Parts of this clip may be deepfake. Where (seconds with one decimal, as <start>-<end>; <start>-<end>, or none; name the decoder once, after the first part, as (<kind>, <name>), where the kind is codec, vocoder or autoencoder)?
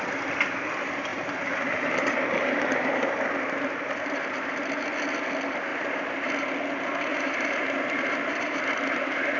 1.1-4.5 (vocoder, BigVGAN v2); 5.7-6.3; 7.1-8.6